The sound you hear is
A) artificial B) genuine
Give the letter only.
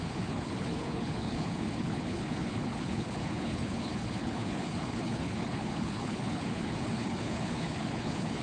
A